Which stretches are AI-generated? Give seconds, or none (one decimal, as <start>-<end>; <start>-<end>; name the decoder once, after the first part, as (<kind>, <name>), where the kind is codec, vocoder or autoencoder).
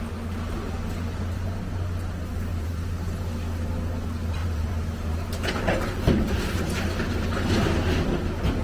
2.5-3.2 (vocoder, BigVGAN v2); 4.4-6.6